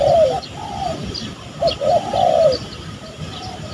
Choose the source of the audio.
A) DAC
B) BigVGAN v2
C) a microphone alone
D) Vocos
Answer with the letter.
C